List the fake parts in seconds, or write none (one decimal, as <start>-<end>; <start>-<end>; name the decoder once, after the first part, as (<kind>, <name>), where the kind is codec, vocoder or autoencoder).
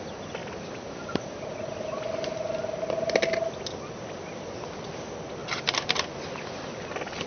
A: 0.4-1.4 (vocoder, BigVGAN v2); 5.4-6.7